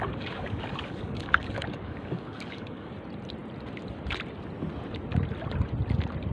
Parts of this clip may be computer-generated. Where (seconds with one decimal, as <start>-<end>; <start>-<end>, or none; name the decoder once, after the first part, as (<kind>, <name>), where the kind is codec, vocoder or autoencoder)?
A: 0.0-2.9 (codec, DAC)